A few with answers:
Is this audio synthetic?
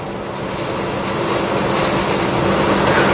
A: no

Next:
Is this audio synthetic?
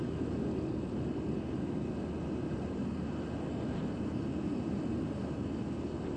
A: no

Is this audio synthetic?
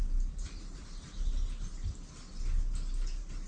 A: no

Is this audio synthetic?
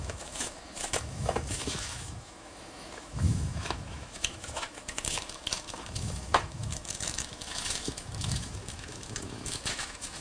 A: yes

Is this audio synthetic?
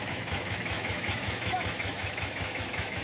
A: yes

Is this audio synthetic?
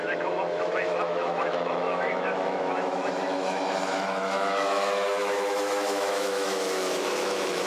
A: yes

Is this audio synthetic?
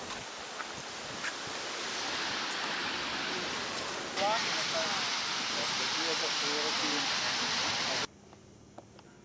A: no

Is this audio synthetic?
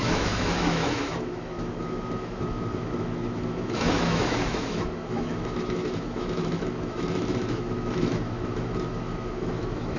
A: yes